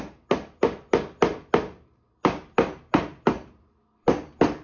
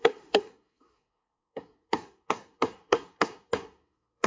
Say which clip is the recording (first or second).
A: first